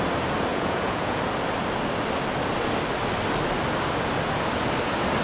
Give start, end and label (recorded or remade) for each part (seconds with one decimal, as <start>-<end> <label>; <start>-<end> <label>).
0.0-0.5 recorded; 0.5-1.2 remade; 1.2-5.2 recorded